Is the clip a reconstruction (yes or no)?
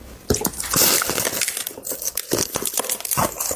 no